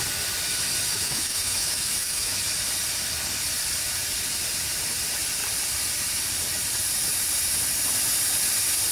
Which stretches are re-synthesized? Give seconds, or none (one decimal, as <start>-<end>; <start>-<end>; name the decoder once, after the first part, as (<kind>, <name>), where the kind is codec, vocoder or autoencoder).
0.9-2.4 (autoencoder, DAC-VAE)